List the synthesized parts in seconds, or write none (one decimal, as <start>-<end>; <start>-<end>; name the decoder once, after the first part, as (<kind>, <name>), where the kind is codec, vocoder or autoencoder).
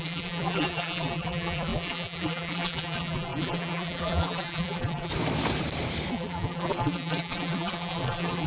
0.0-5.1 (vocoder, BigVGAN v2); 6.1-8.5